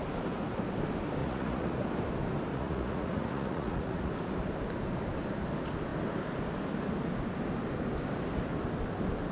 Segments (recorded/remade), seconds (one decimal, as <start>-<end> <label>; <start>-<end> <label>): 0.0-1.2 recorded; 1.2-1.8 remade; 1.8-2.5 recorded; 2.5-4.1 remade; 4.1-9.3 recorded